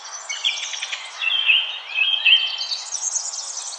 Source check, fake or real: fake